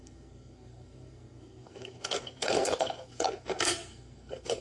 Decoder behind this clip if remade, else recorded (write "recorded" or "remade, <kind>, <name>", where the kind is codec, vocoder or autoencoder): remade, codec, SNAC